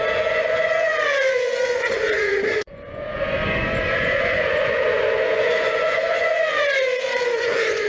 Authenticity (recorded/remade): remade